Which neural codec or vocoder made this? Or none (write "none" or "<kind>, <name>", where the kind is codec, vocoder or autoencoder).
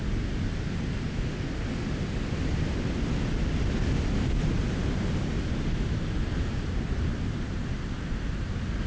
none